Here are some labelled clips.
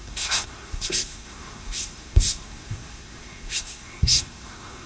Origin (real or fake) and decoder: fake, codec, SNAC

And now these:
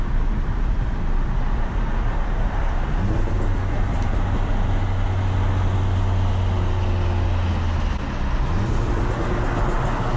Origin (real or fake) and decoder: real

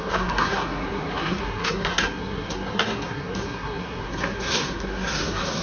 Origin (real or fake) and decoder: fake, codec, SNAC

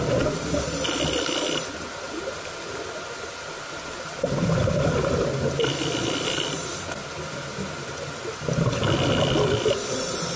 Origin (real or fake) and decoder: real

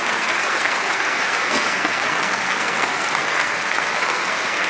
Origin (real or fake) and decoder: fake, codec, SNAC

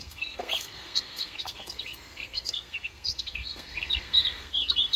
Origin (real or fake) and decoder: fake, codec, SNAC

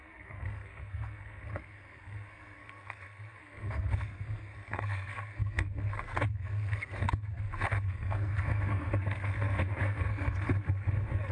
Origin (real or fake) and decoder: fake, codec, SNAC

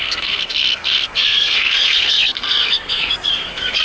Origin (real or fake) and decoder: fake, codec, SNAC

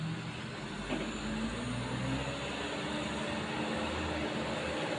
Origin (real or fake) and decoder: real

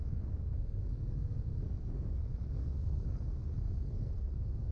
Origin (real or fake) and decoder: fake, codec, SNAC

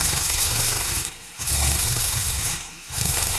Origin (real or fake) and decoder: fake, codec, SNAC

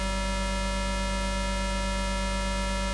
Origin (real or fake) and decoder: real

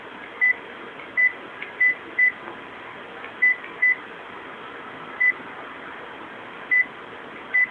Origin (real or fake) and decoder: real